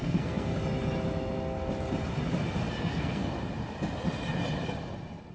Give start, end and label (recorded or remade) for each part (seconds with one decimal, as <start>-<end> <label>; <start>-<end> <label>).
0.0-0.5 remade; 0.5-2.8 recorded; 2.8-3.2 remade; 3.2-5.3 recorded